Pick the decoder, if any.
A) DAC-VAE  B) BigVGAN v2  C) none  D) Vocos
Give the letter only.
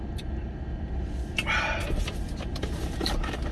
B